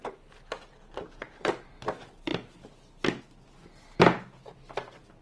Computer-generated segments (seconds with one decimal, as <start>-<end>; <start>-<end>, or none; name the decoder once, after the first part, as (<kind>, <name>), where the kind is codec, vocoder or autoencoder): 0.0-2.3 (vocoder, BigVGAN v2)